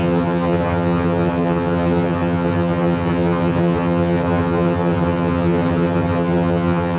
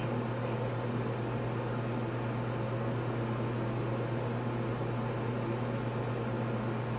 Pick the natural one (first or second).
second